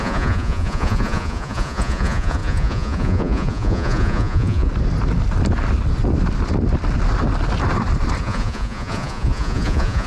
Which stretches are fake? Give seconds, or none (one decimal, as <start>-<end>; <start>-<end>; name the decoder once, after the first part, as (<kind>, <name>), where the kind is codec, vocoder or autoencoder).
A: 0.0-4.7 (vocoder, Vocos); 8.2-10.1